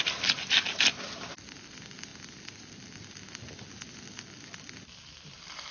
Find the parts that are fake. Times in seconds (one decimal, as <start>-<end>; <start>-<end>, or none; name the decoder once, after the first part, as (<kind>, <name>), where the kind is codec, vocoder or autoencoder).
none